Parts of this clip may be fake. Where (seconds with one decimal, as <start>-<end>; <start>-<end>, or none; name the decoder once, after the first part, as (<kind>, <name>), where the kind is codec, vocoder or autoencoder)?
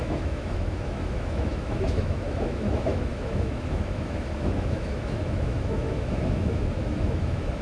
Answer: 0.0-7.6 (autoencoder, DAC-VAE)